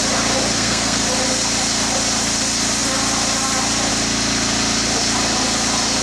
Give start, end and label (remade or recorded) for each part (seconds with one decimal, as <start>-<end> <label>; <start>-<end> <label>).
0.0-0.5 recorded; 0.5-1.0 remade; 1.0-6.0 recorded